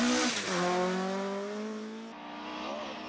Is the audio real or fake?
real